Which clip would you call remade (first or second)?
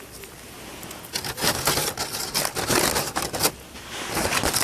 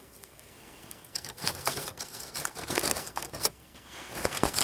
second